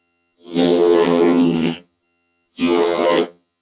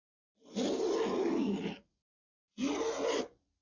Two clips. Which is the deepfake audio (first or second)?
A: first